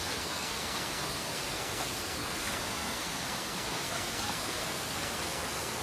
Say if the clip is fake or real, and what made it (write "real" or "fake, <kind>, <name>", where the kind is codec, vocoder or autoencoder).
fake, codec, SNAC